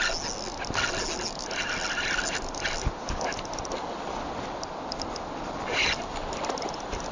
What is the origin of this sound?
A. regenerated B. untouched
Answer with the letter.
B